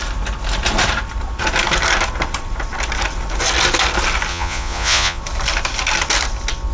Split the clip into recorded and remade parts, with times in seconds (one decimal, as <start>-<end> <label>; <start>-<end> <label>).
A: 0.0-4.3 recorded; 4.3-5.2 remade; 5.2-6.7 recorded